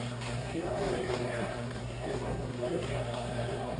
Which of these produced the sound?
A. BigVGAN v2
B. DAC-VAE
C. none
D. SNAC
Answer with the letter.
D